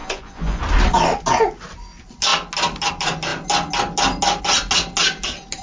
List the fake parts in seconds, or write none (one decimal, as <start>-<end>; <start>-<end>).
0.0-0.6